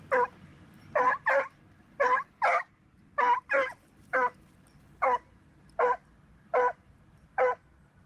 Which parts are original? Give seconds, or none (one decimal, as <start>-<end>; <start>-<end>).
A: 0.0-0.5; 1.8-3.1; 4.1-8.1